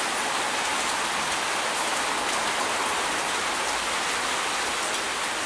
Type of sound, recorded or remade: recorded